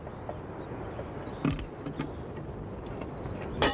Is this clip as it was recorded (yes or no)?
yes